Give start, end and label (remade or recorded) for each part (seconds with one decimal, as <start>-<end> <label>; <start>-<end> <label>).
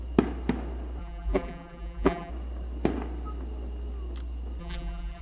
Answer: 0.0-1.0 recorded; 1.0-2.3 remade; 2.3-4.6 recorded; 4.6-5.2 remade